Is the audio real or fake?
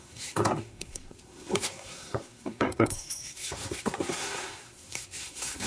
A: fake